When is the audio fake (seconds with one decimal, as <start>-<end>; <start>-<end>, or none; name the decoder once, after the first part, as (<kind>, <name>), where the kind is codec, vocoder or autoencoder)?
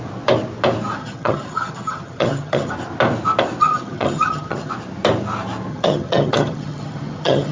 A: 1.0-2.7 (vocoder, HiFi-GAN); 3.6-4.7; 5.7-7.5